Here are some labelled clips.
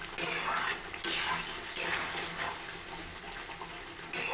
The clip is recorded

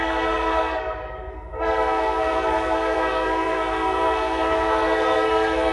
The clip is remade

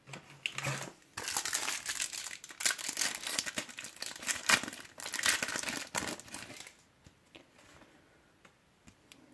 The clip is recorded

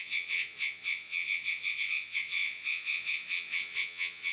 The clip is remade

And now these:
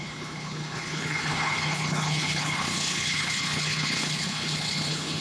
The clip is remade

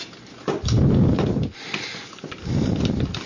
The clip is recorded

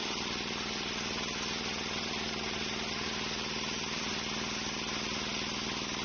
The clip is recorded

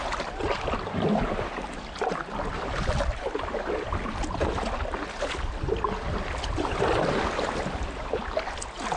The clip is recorded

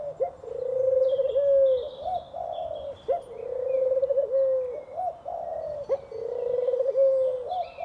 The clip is recorded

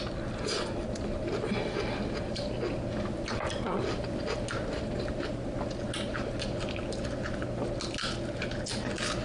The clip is recorded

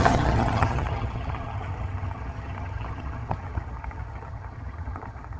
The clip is remade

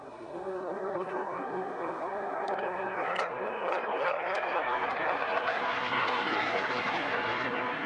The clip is remade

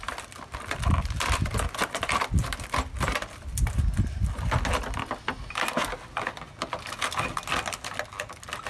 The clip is recorded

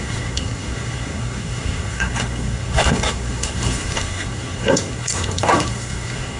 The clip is remade